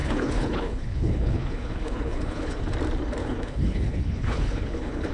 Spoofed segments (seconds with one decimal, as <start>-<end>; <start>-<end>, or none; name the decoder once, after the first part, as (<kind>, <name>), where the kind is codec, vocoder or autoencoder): 0.0-2.6 (codec, HILCodec); 3.2-5.1